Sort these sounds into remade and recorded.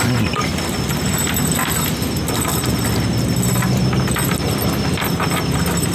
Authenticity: recorded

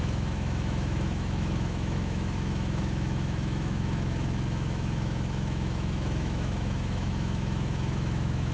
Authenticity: remade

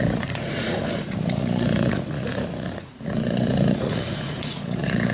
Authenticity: remade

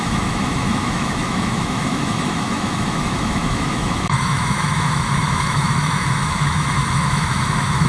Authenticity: remade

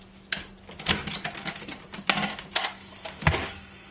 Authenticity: recorded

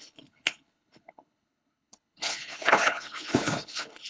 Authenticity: remade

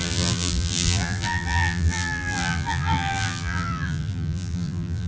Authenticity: remade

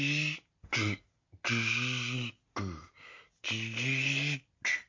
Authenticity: recorded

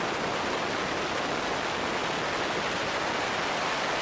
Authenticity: recorded